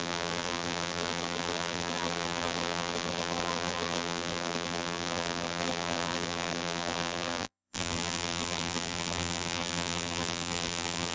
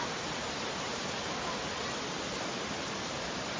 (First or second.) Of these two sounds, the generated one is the first